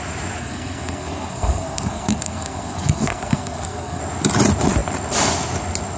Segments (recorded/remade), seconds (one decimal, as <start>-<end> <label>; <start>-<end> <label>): 0.0-0.4 recorded; 0.4-4.0 remade; 4.0-6.0 recorded